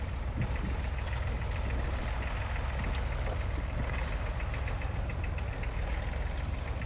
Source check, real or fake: real